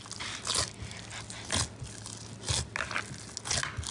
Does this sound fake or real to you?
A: real